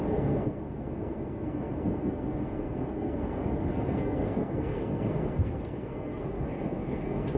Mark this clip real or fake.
fake